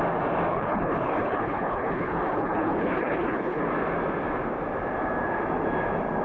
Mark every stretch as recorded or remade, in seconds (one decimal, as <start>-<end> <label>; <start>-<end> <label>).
0.0-0.5 recorded; 0.5-3.6 remade; 3.6-6.2 recorded